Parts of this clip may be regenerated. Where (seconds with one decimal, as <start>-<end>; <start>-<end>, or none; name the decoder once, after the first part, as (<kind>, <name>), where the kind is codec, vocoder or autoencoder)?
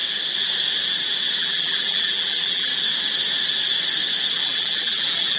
1.4-2.7 (vocoder, BigVGAN v2); 4.3-5.4